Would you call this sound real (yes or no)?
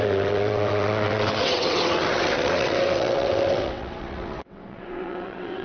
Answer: no